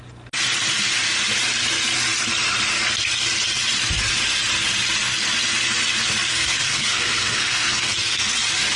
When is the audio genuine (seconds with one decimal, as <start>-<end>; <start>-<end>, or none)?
0.0-6.3; 8.4-8.8